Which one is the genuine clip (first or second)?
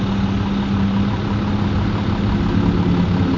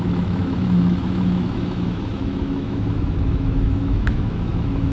first